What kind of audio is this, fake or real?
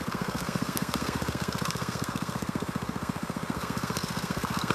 fake